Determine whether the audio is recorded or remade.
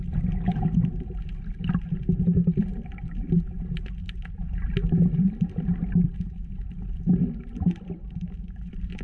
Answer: recorded